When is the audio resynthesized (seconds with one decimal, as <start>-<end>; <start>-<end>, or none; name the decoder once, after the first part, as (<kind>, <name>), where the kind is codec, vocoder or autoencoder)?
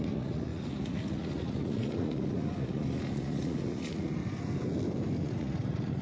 0.0-4.2 (vocoder, Vocos); 5.2-6.0